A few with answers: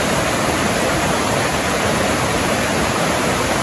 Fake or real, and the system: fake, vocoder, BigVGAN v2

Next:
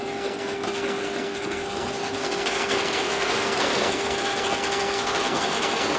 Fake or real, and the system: fake, codec, SNAC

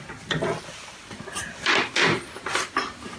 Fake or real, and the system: real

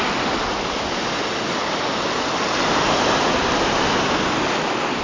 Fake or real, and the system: real